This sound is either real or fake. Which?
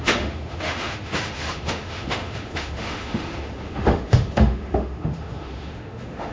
fake